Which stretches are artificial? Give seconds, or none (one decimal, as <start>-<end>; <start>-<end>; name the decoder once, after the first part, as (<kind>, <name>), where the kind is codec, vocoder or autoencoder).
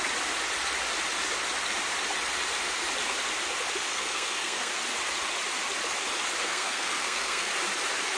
3.9-4.7 (codec, SNAC); 6.4-7.5